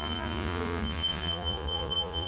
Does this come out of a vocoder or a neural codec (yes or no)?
yes